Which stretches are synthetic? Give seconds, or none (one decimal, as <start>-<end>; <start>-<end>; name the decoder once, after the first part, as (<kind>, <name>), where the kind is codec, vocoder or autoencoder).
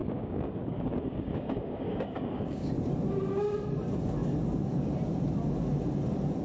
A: 0.0-2.7 (codec, DAC)